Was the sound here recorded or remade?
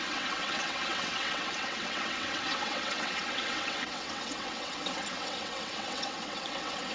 remade